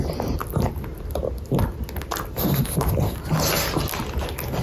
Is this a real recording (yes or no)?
yes